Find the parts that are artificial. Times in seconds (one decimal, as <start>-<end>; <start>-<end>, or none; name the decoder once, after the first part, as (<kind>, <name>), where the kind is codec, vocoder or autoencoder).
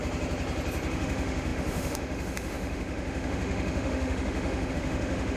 0.9-5.4 (autoencoder, DAC-VAE)